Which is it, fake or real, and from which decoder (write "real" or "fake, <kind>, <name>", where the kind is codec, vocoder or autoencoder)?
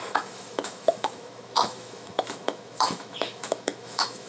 fake, autoencoder, DAC-VAE